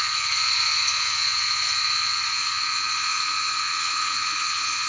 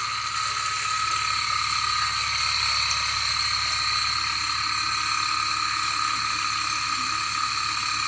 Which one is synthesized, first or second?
first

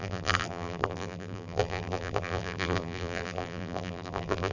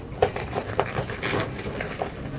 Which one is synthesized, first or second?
first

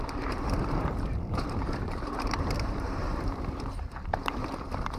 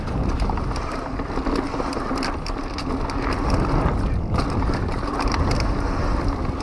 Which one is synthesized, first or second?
first